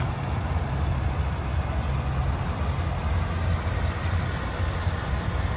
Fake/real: real